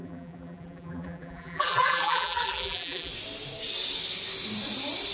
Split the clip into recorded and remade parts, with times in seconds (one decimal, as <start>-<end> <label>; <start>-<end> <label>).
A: 0.0-3.1 remade; 3.1-5.1 recorded